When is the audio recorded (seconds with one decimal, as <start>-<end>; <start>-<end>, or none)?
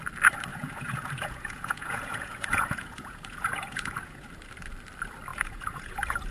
0.0-0.5; 4.3-5.3